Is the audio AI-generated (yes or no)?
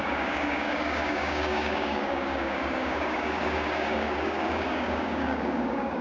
yes